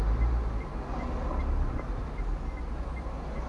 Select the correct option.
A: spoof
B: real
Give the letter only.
B